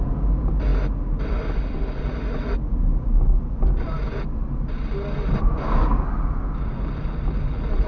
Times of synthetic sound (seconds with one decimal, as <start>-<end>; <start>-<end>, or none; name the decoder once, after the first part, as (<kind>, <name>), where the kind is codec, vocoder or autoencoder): none